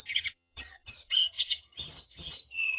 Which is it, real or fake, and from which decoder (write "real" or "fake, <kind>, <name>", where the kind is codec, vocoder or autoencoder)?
fake, vocoder, HiFi-GAN